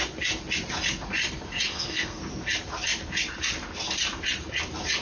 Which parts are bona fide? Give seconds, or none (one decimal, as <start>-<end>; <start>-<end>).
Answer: 0.0-1.7; 2.2-5.0